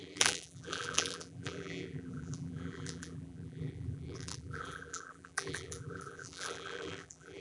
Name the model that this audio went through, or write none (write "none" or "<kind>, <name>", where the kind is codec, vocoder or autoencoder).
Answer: vocoder, BigVGAN v2